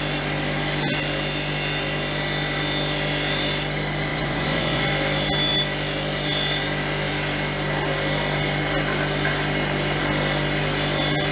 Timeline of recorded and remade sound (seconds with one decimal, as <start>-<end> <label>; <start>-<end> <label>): 0.0-4.1 recorded; 4.1-4.9 remade; 4.9-11.3 recorded